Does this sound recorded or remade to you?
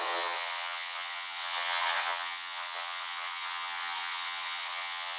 remade